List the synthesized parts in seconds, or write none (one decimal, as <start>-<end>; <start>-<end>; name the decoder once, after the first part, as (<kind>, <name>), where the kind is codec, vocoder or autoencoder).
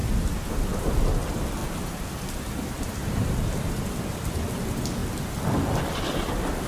0.0-0.8 (vocoder, BigVGAN v2); 1.6-4.5